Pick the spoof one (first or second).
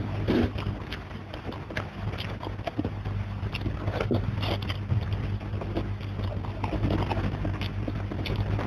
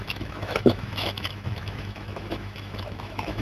second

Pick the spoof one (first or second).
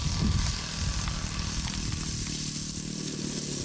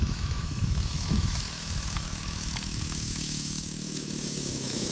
second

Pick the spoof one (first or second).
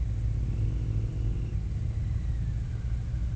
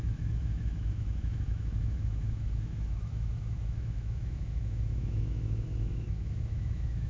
second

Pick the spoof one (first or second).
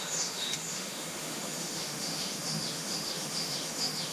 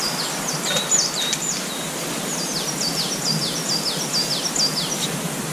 first